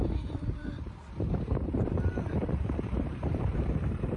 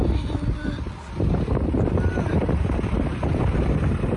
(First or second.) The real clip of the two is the second